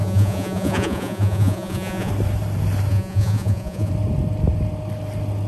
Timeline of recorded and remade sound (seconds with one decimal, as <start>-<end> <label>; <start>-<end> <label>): 0.0-2.1 remade; 2.1-2.9 recorded; 2.9-3.9 remade; 3.9-5.5 recorded

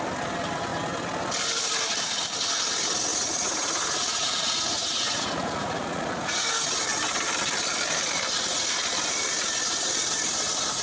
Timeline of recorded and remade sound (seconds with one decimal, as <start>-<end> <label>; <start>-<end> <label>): 0.0-3.1 recorded; 3.1-6.5 remade; 6.5-10.8 recorded